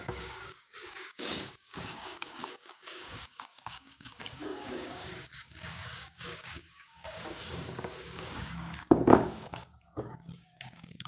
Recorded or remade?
remade